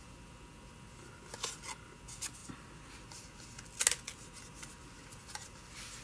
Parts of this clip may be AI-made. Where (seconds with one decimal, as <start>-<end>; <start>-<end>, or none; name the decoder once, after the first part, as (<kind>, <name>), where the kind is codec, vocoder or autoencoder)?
none